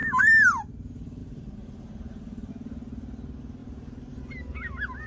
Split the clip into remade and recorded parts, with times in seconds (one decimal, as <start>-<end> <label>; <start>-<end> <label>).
0.0-1.2 recorded; 1.2-2.5 remade; 2.5-3.6 recorded; 3.6-4.2 remade; 4.2-5.1 recorded